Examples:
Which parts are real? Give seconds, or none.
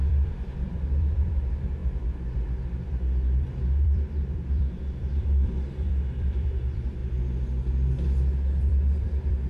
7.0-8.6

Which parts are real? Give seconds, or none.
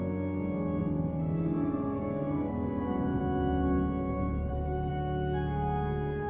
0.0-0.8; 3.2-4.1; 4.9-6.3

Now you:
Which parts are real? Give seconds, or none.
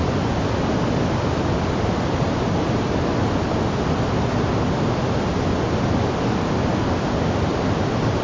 0.0-8.2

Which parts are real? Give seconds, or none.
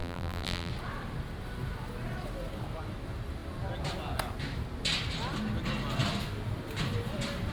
0.7-7.5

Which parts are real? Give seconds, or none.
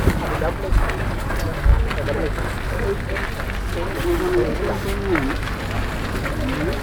0.0-6.8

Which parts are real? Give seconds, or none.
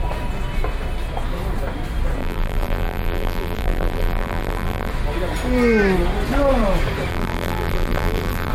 0.0-2.2; 4.9-7.1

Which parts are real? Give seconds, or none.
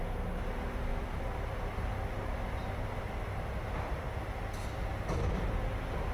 0.0-0.9; 1.6-6.1